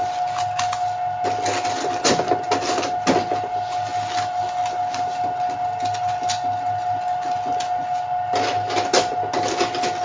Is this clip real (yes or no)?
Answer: yes